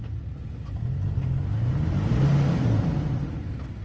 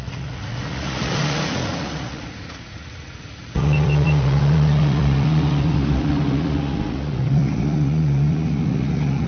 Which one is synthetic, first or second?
second